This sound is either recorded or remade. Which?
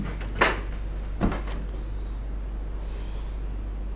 recorded